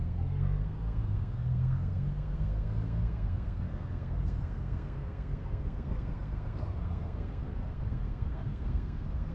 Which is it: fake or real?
fake